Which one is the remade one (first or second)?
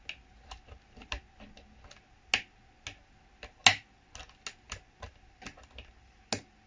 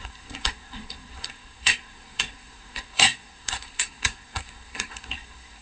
second